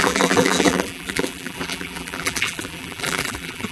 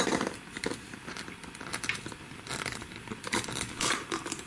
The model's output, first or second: first